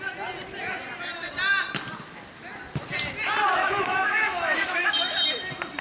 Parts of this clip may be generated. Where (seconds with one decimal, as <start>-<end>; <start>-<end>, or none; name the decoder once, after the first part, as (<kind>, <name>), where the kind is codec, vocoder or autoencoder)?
3.6-4.9 (autoencoder, DAC-VAE)